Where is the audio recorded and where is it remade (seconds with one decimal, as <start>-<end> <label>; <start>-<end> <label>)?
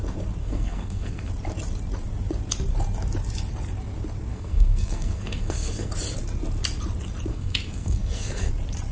0.0-0.4 recorded; 0.4-1.3 remade; 1.3-4.3 recorded; 4.3-5.9 remade; 5.9-7.3 recorded; 7.3-8.5 remade; 8.5-8.9 recorded